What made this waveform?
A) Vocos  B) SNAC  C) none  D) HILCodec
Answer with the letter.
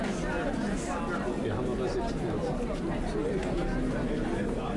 C